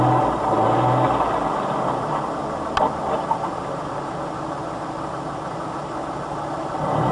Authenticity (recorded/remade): recorded